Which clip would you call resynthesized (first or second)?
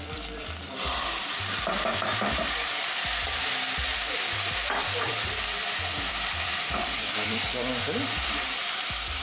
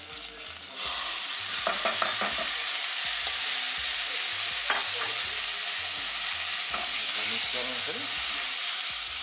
first